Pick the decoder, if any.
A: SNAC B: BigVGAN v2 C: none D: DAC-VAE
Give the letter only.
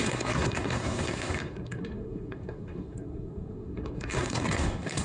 A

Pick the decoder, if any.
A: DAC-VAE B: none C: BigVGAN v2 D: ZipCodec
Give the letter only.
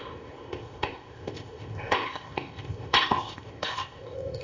D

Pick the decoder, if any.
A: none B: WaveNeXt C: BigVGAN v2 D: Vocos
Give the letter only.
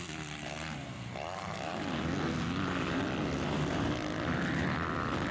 A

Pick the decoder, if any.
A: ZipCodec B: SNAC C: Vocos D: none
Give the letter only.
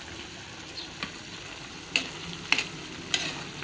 D